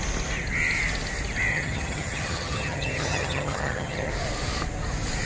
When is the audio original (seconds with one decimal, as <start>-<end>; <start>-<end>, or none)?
0.0-1.5; 4.1-5.3